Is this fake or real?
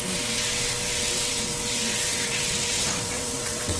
fake